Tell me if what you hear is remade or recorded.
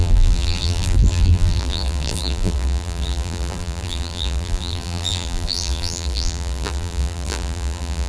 remade